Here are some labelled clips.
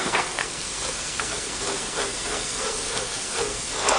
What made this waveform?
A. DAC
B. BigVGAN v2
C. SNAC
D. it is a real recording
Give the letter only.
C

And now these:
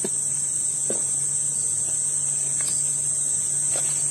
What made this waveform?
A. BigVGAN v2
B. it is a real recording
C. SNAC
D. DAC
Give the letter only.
B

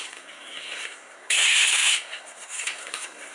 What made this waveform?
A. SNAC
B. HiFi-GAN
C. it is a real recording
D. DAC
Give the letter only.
A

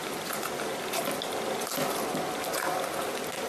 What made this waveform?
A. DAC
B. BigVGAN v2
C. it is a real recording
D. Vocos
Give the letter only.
C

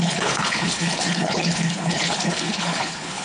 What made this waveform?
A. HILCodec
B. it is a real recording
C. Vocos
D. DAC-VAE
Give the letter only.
A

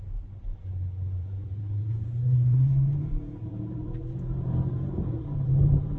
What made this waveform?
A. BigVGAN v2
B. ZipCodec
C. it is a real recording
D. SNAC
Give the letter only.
A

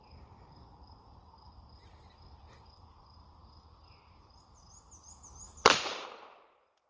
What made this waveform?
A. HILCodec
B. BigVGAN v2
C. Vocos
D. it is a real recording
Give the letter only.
B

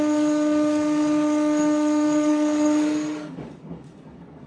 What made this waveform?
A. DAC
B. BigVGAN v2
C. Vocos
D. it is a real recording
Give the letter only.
A